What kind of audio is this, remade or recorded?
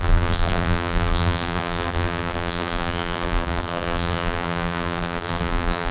remade